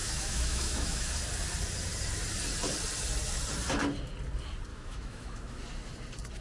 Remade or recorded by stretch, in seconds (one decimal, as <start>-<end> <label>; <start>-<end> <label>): 0.0-1.1 remade; 1.1-4.7 recorded; 4.7-5.6 remade; 5.6-6.4 recorded